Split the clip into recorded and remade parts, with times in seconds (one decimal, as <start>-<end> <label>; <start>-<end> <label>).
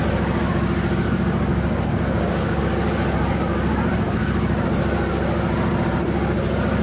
0.0-1.5 recorded; 1.5-2.6 remade; 2.6-6.8 recorded